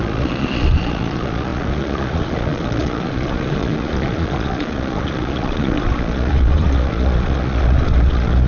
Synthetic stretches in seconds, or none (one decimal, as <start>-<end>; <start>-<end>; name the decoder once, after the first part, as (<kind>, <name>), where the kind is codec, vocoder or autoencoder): 0.0-8.5 (vocoder, Vocos)